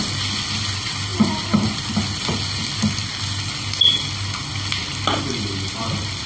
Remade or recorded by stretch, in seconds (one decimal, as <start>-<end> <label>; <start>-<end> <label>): 0.0-6.3 recorded